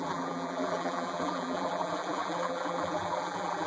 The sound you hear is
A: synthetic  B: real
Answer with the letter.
A